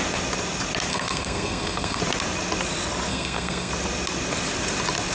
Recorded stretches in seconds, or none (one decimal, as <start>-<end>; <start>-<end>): 0.0-0.9; 2.0-3.1; 3.7-5.1